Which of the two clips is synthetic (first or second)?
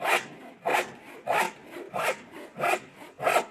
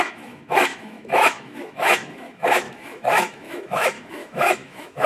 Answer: second